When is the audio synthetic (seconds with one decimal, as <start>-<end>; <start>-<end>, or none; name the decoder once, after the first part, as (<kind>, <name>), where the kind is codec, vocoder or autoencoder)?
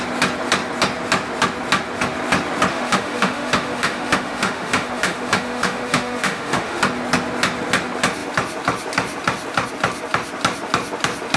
2.7-6.8 (autoencoder, DAC-VAE)